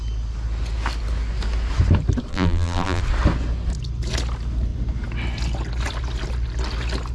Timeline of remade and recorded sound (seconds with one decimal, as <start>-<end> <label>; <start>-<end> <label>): 0.0-2.3 recorded; 2.3-3.0 remade; 3.0-7.1 recorded